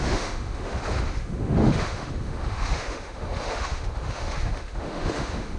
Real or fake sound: fake